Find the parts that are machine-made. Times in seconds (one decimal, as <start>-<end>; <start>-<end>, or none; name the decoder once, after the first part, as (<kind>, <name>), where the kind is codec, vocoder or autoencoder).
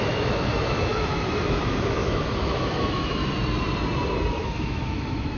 0.0-3.2 (autoencoder, DAC-VAE); 4.3-5.4